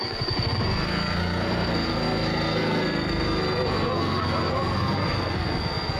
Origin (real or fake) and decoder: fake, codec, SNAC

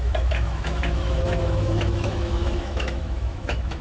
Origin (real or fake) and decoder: fake, autoencoder, DAC-VAE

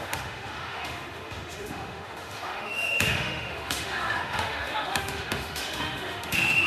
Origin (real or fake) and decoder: fake, autoencoder, DAC-VAE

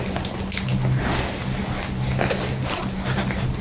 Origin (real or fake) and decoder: real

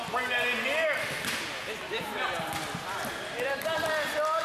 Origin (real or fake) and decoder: real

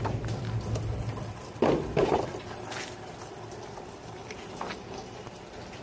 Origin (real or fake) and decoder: fake, vocoder, BigVGAN v2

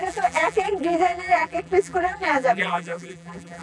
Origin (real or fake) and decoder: fake, vocoder, BigVGAN v2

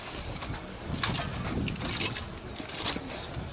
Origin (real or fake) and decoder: real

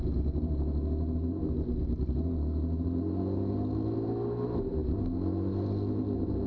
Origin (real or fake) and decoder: real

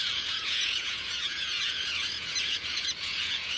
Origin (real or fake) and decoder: fake, vocoder, Vocos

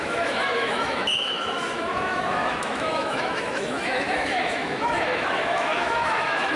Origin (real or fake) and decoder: fake, autoencoder, DAC-VAE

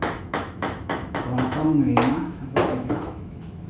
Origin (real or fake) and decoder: fake, autoencoder, DAC-VAE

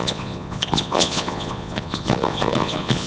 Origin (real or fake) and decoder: fake, vocoder, Vocos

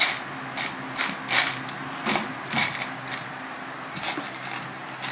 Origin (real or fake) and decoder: real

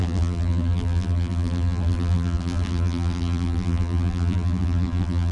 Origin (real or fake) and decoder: fake, vocoder, BigVGAN v2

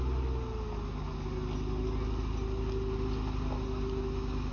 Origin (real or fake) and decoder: real